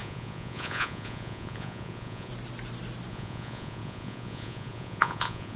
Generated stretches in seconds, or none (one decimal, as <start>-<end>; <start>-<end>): 0.0-2.3; 3.1-5.6